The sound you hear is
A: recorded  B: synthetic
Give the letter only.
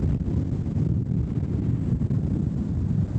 A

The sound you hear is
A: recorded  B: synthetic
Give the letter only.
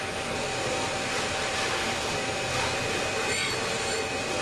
A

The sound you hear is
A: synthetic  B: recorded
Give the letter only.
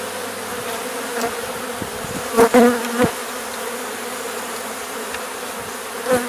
B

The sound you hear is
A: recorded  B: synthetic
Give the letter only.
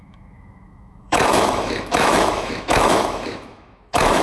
B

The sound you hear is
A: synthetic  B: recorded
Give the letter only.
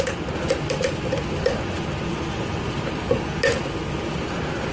B